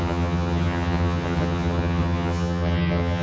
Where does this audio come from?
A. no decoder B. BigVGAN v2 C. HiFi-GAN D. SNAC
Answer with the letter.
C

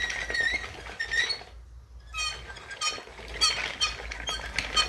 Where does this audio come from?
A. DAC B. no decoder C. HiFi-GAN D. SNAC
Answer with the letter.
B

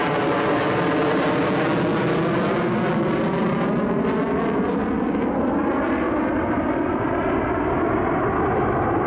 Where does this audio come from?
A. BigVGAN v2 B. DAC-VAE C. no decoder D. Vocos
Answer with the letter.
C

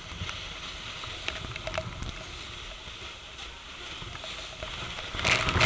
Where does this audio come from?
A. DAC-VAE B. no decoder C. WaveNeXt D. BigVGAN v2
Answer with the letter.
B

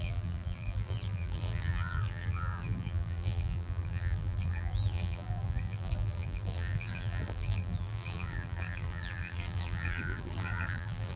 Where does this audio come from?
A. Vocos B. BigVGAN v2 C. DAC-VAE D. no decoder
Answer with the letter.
B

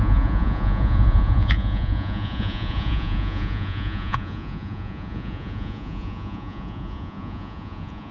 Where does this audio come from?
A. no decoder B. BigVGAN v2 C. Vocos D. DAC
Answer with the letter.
C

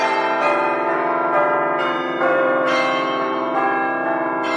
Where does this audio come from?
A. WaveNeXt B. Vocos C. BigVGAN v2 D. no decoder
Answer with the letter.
C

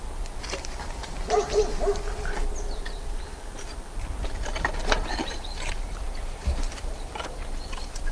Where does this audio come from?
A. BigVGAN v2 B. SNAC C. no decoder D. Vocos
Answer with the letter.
A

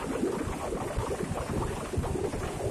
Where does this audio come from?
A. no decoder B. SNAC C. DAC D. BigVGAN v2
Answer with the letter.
A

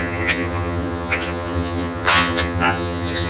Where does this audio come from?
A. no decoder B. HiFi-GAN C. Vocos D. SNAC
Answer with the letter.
B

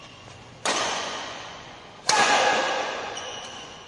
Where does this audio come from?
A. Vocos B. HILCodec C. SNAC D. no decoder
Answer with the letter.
A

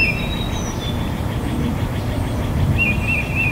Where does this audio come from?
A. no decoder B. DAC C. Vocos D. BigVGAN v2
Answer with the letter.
A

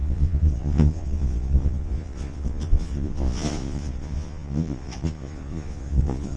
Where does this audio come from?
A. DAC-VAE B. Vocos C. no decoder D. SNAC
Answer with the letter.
B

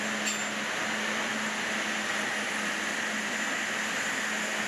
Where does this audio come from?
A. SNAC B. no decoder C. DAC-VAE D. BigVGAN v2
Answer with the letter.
B